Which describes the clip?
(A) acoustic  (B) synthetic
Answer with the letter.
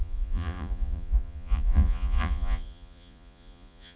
B